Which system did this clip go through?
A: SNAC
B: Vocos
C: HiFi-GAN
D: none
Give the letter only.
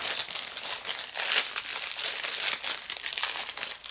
D